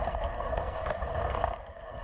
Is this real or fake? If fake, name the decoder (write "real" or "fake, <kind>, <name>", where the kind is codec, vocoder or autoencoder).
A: fake, codec, SNAC